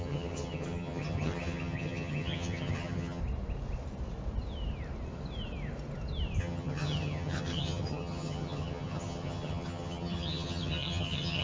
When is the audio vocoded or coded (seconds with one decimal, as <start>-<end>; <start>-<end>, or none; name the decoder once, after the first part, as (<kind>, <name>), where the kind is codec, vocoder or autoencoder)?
0.0-3.2 (vocoder, HiFi-GAN); 6.4-11.4